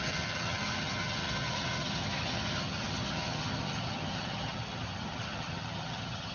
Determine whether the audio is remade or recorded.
remade